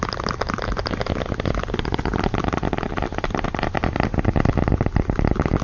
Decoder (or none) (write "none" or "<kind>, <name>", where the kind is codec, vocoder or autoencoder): vocoder, BigVGAN v2